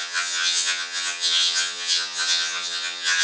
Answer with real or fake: fake